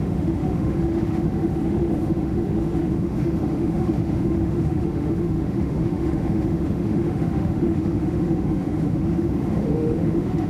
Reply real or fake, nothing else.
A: fake